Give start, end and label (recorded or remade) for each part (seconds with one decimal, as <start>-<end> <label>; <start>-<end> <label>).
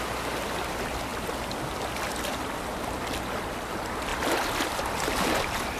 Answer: 0.0-5.8 remade